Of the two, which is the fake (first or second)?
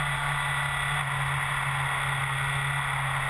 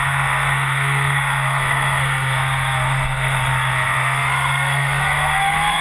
second